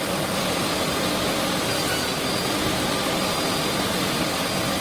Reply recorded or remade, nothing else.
recorded